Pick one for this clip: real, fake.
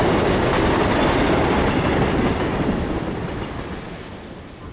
real